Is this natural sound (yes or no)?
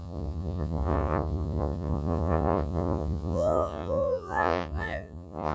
no